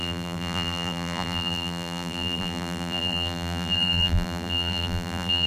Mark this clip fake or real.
fake